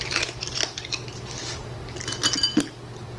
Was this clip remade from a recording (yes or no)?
no